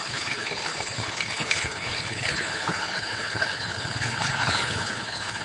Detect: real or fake fake